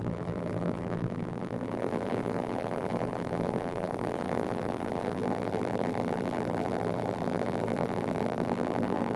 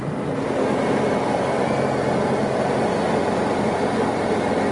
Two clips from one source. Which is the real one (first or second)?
second